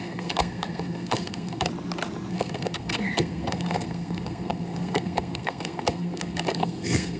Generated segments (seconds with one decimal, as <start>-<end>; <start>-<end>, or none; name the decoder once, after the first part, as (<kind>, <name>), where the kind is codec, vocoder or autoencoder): 0.0-1.7 (codec, SNAC); 2.3-7.2